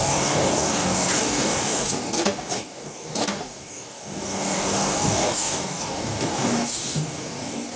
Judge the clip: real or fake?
fake